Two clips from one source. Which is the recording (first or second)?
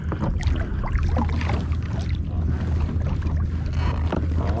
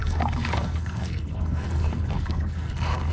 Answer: first